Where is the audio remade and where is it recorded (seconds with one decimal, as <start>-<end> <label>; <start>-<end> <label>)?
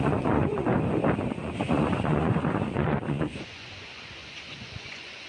0.0-0.7 remade; 0.7-1.3 recorded; 1.3-5.3 remade